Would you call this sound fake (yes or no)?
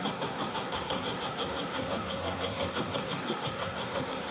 yes